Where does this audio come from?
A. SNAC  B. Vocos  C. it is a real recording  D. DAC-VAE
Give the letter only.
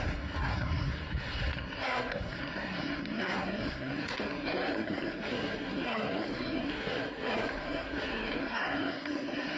A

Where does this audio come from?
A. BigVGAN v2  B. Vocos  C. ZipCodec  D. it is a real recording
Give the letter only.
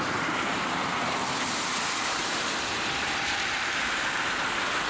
A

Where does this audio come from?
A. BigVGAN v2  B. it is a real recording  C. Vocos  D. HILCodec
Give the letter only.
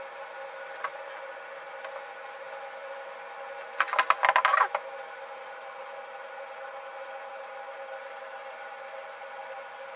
B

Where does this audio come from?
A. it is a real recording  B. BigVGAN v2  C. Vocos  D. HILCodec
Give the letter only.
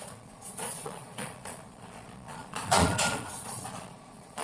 C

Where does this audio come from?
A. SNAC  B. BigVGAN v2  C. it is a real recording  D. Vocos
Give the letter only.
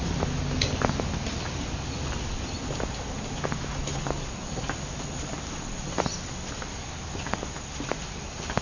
C